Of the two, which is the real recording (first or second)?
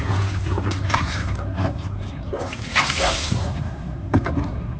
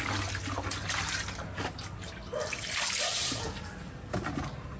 second